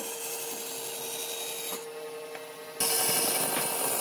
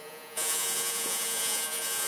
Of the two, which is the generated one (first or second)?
second